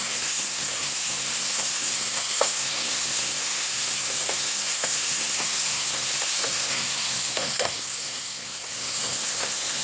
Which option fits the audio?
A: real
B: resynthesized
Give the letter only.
B